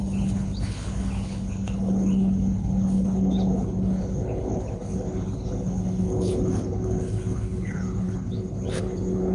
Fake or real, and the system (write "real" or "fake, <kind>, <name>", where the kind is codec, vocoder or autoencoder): fake, codec, HILCodec